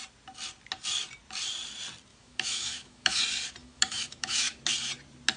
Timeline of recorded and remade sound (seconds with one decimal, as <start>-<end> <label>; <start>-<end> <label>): 0.0-2.1 recorded; 2.1-3.2 remade; 3.2-3.6 recorded; 3.6-4.7 remade; 4.7-5.4 recorded